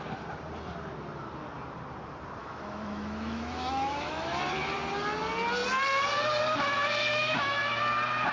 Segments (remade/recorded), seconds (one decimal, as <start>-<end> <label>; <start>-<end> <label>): 0.0-2.4 recorded; 2.4-4.4 remade; 4.4-7.1 recorded; 7.1-7.8 remade; 7.8-8.3 recorded